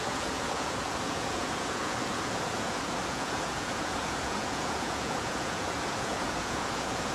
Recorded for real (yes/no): no